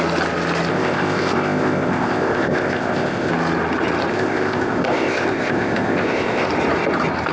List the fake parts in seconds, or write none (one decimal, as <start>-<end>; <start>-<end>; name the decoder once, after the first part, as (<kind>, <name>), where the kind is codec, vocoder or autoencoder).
0.7-3.3 (codec, ZipCodec); 4.1-6.5